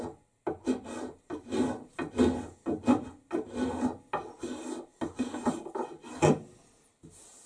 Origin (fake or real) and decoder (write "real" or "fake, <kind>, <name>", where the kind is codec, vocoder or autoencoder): real